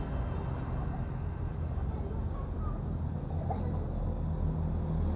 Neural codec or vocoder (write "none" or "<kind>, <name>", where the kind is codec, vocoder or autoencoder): none